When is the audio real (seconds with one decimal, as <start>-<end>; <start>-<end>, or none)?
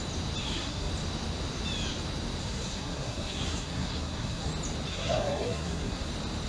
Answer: 0.0-0.4; 0.9-2.4; 4.5-4.9; 6.1-6.5